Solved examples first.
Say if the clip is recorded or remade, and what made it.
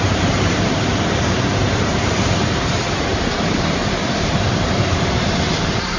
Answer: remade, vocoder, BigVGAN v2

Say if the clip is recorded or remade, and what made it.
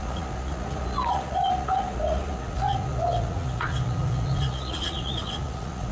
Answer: remade, vocoder, Vocos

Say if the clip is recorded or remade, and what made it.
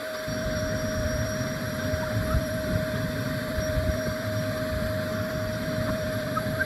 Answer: remade, vocoder, BigVGAN v2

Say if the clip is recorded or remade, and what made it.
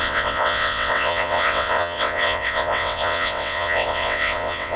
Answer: remade, vocoder, WaveNeXt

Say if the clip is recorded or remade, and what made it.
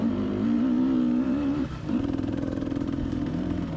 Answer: remade, vocoder, BigVGAN v2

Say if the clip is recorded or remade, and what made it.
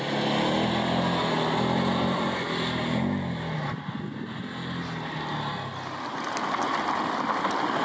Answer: recorded